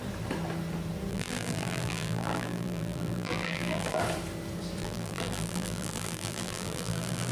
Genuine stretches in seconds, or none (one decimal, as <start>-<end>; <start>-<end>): 0.0-1.1; 4.0-4.8